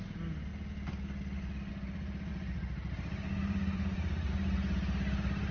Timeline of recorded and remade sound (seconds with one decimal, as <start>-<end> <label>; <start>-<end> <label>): 0.0-2.3 recorded; 2.3-4.3 remade; 4.3-5.5 recorded